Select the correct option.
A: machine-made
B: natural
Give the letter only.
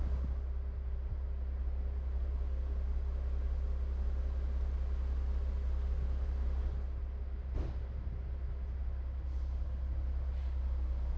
B